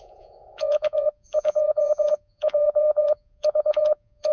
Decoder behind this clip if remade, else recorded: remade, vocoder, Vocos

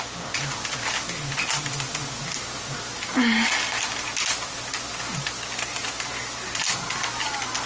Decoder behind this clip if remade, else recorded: recorded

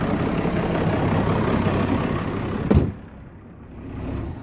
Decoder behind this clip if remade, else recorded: recorded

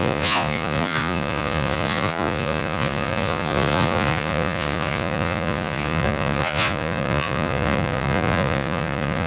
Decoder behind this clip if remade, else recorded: remade, vocoder, Vocos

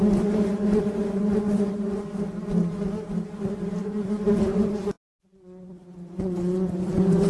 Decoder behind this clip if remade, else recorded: recorded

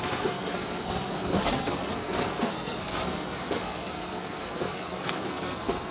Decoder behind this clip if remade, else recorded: remade, codec, SNAC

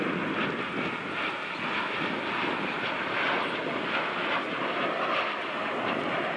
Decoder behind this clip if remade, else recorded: recorded